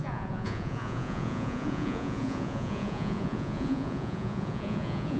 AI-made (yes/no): yes